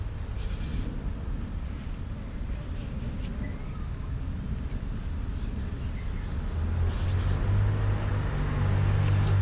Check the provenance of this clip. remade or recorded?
recorded